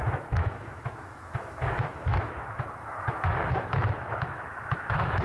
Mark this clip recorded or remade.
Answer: remade